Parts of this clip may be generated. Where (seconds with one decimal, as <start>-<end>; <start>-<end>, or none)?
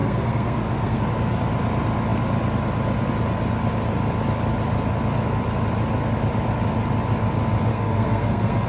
0.0-1.0; 7.7-8.7